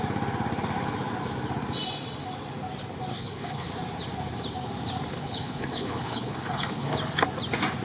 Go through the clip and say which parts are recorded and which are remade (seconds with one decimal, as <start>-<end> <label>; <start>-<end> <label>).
0.0-3.1 recorded; 3.1-3.7 remade; 3.7-5.1 recorded; 5.1-6.9 remade; 6.9-7.8 recorded

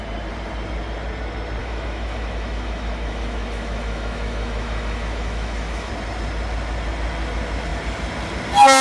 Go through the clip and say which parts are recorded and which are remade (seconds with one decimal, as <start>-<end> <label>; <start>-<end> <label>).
0.0-1.6 recorded; 1.6-5.9 remade; 5.9-8.8 recorded

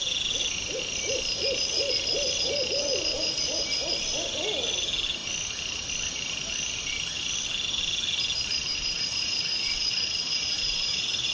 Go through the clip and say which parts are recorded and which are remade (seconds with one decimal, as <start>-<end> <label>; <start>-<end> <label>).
0.0-8.8 recorded; 8.8-11.3 remade

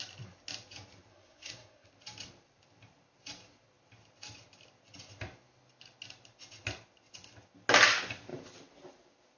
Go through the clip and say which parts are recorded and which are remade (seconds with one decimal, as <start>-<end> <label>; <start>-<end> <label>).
0.0-1.1 recorded; 1.1-1.9 remade; 1.9-9.4 recorded

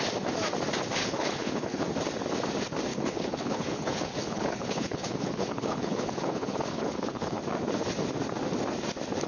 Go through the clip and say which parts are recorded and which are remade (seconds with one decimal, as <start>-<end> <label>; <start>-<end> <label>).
0.0-1.0 recorded; 1.0-1.8 remade; 1.8-2.9 recorded; 2.9-7.4 remade; 7.4-9.3 recorded

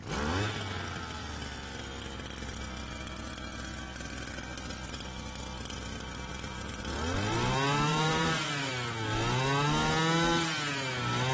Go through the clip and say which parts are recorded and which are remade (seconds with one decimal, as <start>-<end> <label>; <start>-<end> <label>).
0.0-6.3 recorded; 6.3-6.9 remade; 6.9-7.9 recorded; 7.9-8.7 remade; 8.7-11.3 recorded